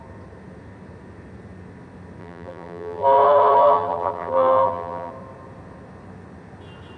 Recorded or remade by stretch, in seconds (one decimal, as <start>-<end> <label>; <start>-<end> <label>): 0.0-2.2 recorded; 2.2-5.1 remade; 5.1-7.0 recorded